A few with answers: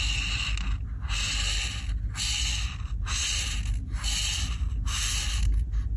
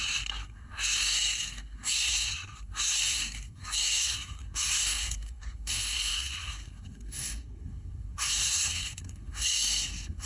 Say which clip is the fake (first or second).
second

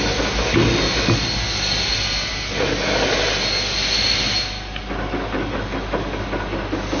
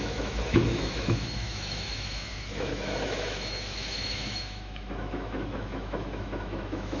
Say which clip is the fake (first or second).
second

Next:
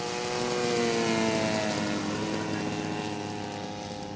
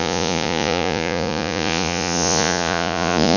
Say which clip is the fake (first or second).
second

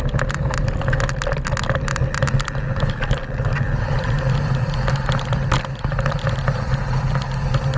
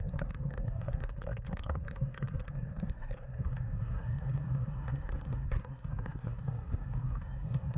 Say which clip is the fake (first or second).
second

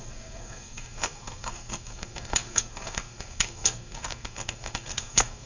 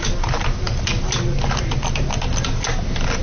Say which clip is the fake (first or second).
first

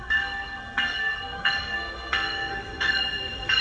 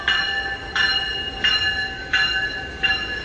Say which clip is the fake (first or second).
first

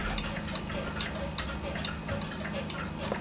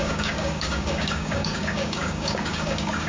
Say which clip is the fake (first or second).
second